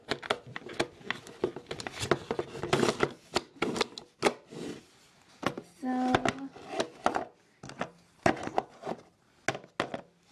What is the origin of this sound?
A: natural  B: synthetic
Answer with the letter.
A